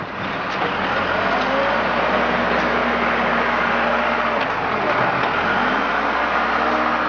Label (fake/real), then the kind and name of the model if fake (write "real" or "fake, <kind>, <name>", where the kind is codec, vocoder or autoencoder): real